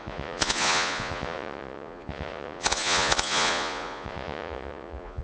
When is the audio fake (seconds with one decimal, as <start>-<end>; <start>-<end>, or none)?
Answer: 0.0-5.2